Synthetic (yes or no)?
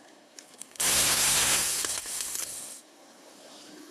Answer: yes